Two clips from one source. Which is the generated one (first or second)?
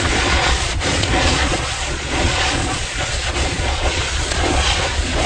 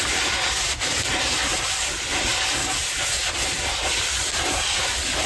first